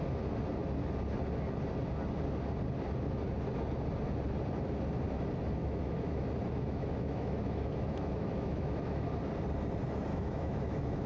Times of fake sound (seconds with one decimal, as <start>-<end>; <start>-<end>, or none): 5.6-9.1; 10.1-11.1